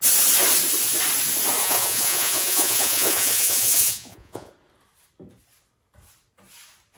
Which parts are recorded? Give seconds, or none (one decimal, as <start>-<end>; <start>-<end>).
0.0-1.6; 4.5-7.0